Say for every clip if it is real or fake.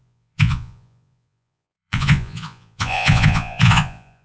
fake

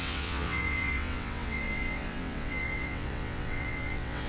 fake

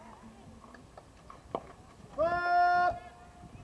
real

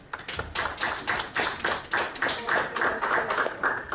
real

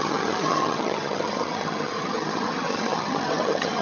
fake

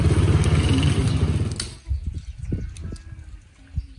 real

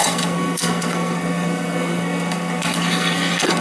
fake